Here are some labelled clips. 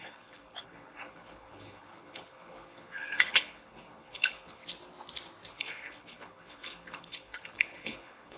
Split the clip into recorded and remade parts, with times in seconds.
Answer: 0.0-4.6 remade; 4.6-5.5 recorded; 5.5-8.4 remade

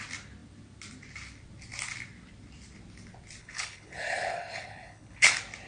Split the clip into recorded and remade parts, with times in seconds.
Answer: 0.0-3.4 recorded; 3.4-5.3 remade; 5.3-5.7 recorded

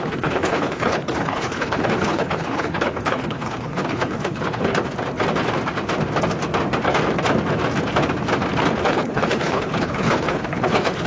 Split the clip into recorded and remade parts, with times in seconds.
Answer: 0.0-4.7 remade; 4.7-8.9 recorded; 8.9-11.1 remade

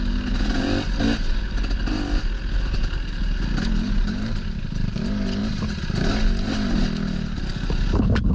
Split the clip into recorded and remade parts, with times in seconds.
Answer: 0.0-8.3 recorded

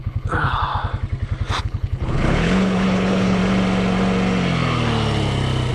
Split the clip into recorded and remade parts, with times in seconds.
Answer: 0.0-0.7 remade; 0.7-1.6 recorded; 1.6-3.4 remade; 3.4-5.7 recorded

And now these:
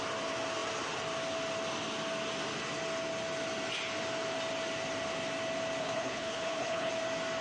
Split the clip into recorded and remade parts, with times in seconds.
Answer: 0.0-5.8 recorded; 5.8-6.9 remade; 6.9-7.4 recorded

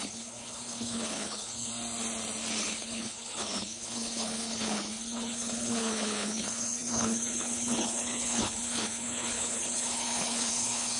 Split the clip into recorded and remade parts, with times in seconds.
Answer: 0.0-1.7 remade; 1.7-2.6 recorded; 2.6-11.0 remade

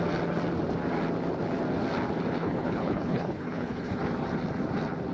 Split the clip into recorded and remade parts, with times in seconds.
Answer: 0.0-2.4 recorded; 2.4-4.0 remade; 4.0-5.1 recorded